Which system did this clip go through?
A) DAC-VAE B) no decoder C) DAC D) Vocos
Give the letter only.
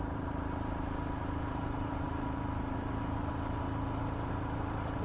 B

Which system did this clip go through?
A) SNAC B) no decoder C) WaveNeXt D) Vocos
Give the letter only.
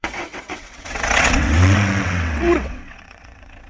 C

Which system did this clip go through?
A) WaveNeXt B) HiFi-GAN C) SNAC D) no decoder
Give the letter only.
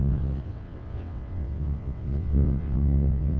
A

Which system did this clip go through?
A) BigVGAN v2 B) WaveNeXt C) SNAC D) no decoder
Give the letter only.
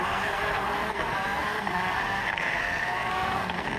C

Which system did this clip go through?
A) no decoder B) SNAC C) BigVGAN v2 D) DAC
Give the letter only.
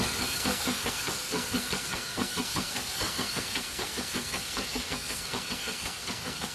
B